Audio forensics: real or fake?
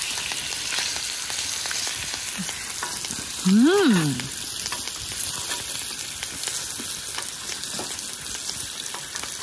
real